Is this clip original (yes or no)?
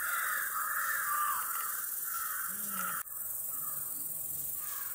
no